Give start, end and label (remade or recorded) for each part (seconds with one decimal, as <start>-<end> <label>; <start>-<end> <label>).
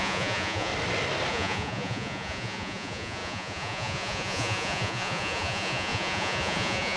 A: 0.0-0.7 remade; 0.7-1.3 recorded; 1.3-7.0 remade